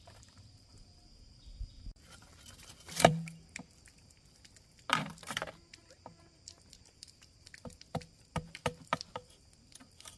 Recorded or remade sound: remade